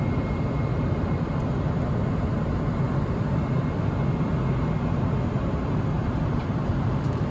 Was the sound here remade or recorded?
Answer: recorded